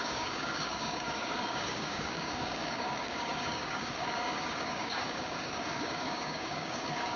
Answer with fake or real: fake